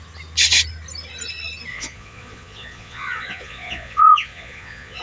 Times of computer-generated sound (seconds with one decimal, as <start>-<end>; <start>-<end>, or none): 1.7-5.0